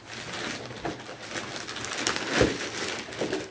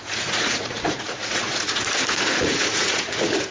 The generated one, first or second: second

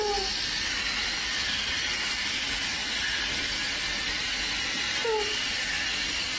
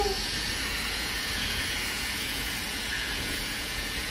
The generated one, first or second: second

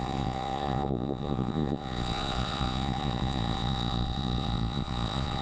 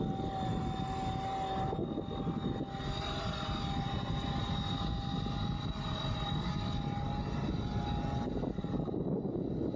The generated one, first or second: first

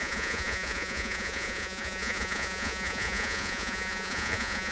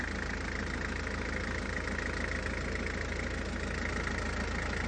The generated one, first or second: first